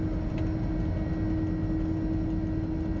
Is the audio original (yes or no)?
yes